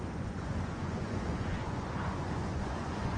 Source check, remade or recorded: remade